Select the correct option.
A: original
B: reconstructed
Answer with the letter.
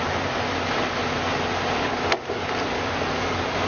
A